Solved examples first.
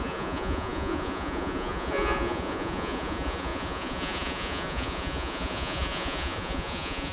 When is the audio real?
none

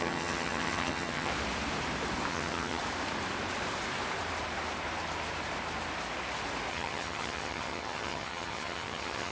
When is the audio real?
1.3-2.3; 2.8-6.7

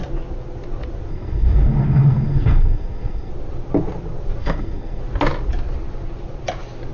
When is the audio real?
0.0-1.1; 3.3-4.4; 5.0-6.9

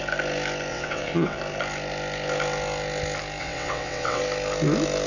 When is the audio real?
0.0-0.7; 1.4-3.4; 4.2-5.1

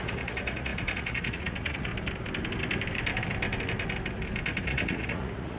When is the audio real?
1.9-4.6

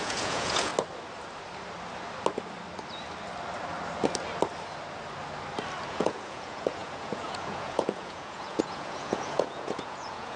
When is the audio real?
0.7-5.9

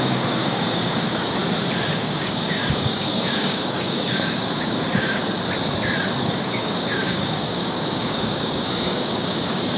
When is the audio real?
1.4-1.9; 5.2-6.2

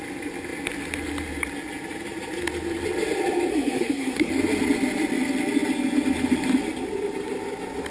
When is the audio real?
0.0-3.5; 4.3-7.9